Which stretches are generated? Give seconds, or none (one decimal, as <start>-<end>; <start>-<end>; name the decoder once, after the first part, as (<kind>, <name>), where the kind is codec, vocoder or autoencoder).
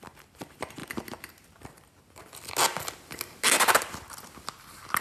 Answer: none